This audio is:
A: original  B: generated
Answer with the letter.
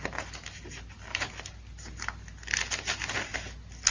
A